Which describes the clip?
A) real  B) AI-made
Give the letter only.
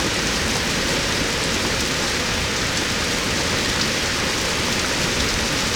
A